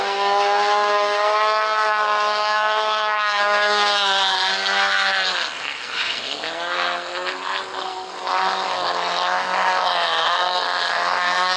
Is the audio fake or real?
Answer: fake